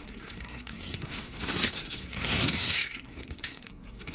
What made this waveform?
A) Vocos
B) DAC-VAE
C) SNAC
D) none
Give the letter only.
C